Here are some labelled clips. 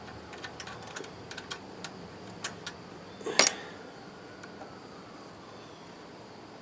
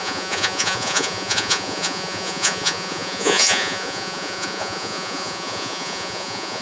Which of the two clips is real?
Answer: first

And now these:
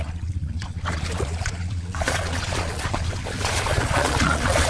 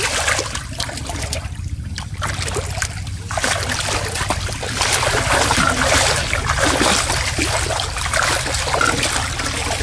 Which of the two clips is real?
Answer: second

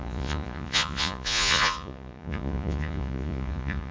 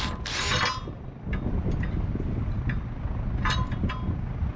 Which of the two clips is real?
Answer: second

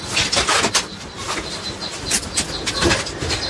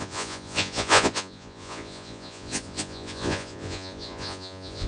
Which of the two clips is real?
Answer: first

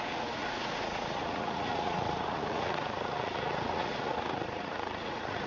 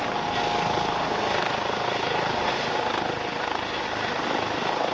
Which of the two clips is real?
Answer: second